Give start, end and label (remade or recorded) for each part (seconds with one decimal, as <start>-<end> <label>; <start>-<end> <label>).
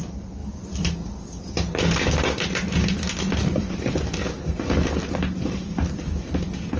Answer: 0.0-6.8 recorded